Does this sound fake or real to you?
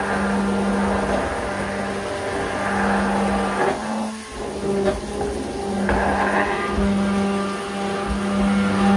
real